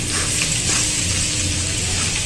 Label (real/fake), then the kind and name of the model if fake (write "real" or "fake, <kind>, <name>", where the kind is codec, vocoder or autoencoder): real